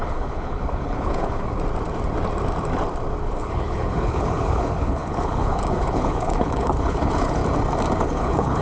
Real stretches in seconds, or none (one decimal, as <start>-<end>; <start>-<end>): 1.5-3.2; 7.4-8.0